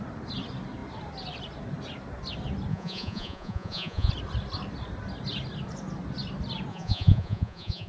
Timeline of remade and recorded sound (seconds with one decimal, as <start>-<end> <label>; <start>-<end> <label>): 0.0-2.7 recorded; 2.7-4.1 remade; 4.1-6.7 recorded; 6.7-7.9 remade